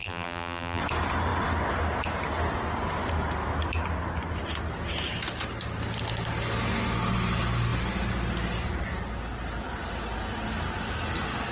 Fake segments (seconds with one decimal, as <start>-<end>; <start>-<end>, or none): 0.0-0.8